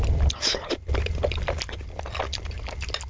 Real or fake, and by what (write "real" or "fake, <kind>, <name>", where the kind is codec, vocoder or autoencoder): real